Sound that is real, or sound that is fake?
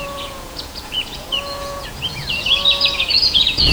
fake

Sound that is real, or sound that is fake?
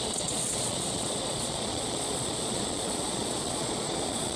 fake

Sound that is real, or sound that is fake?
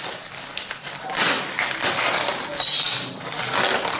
real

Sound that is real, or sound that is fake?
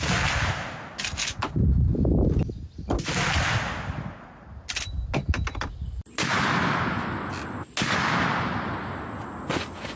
real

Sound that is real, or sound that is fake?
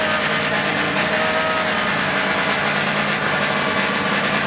real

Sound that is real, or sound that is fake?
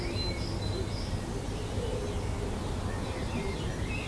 real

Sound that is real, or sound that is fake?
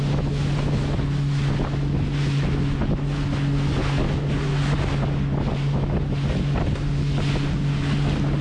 real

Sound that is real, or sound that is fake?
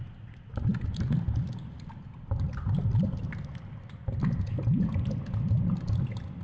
real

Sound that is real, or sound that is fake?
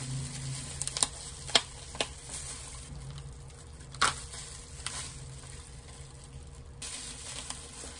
real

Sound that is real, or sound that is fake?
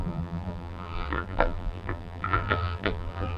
fake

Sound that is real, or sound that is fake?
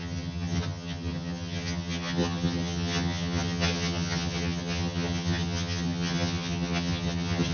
fake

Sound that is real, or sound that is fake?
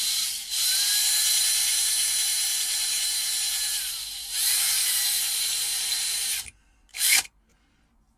fake